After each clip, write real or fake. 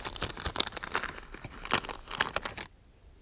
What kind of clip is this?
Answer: real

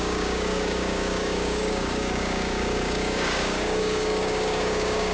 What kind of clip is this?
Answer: fake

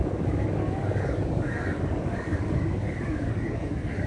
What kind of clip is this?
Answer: fake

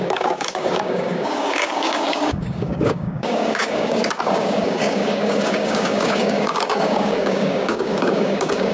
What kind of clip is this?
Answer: fake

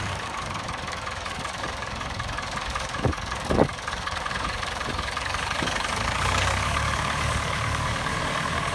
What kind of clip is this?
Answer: fake